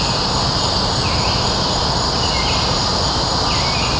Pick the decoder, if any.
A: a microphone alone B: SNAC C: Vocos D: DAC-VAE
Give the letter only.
A